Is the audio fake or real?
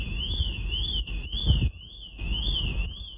real